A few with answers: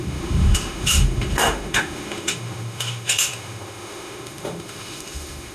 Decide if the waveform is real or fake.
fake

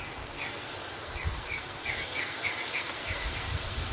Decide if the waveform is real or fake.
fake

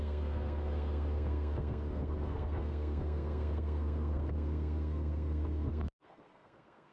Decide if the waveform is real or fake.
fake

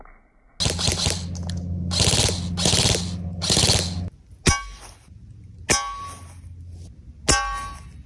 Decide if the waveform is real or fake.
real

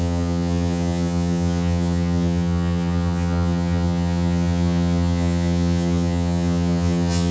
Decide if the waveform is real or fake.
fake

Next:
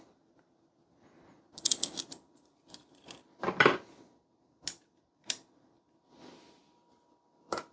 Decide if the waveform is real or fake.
real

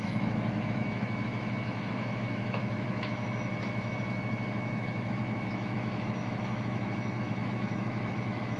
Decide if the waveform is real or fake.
fake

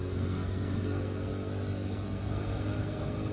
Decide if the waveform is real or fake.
fake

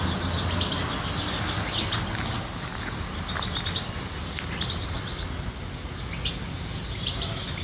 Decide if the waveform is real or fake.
real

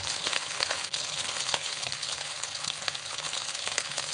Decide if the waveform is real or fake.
fake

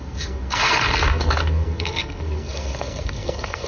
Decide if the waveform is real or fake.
fake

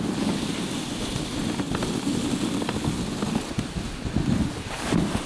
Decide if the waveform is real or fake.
real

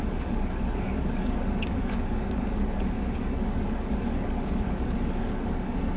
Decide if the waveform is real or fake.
fake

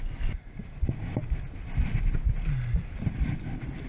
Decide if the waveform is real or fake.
real